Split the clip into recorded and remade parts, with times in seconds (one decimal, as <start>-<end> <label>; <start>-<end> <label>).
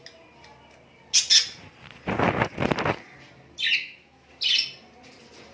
0.0-3.8 recorded; 3.8-4.3 remade; 4.3-5.5 recorded